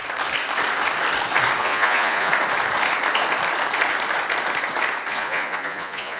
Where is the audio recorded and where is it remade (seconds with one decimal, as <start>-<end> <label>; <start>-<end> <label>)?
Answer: 0.0-1.6 recorded; 1.6-2.3 remade; 2.3-5.1 recorded; 5.1-6.2 remade

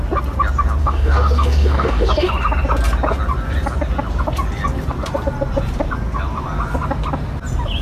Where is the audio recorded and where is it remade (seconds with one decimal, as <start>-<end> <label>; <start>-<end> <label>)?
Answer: 0.0-0.8 recorded; 0.8-2.3 remade; 2.3-7.8 recorded

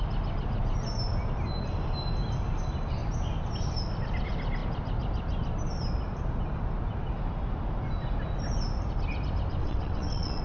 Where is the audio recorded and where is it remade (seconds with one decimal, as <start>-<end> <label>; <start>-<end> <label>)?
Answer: 0.0-9.6 recorded; 9.6-10.4 remade